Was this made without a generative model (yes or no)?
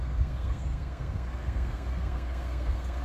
no